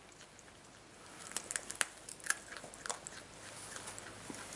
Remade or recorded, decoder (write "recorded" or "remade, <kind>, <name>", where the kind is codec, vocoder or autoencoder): recorded